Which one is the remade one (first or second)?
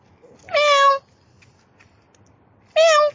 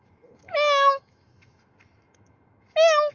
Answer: second